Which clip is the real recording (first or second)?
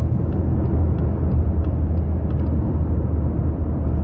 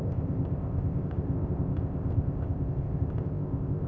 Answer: first